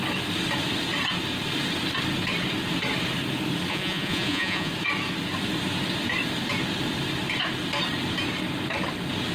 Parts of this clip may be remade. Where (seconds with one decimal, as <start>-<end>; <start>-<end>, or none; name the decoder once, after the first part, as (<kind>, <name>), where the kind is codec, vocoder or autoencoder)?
3.7-4.7 (vocoder, Vocos)